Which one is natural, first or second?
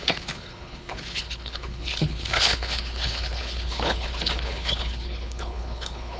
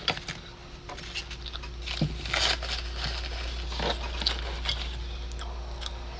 second